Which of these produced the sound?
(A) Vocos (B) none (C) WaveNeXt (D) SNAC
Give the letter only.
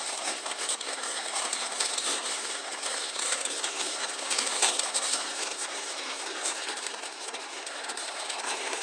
D